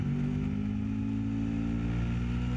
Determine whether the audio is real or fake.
real